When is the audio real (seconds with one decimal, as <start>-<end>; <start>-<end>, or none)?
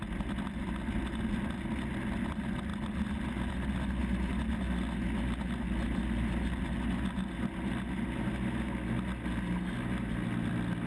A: 0.0-10.9